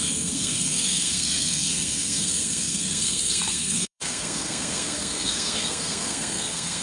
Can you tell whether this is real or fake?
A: fake